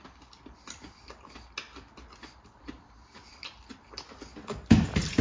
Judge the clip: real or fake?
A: real